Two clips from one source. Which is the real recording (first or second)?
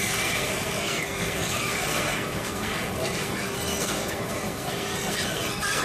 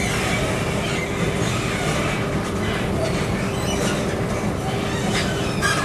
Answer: second